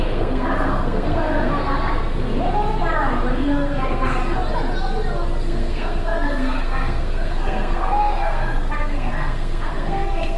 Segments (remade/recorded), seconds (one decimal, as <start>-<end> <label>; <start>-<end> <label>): 0.0-2.0 remade; 2.0-3.3 recorded; 3.3-4.2 remade; 4.2-5.4 recorded; 5.4-10.4 remade